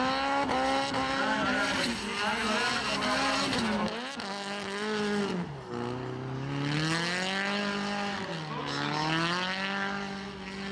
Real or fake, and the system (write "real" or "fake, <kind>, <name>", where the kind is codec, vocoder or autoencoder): real